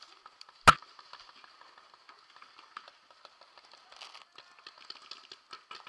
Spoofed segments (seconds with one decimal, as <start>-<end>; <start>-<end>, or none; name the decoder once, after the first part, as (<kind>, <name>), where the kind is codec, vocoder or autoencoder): none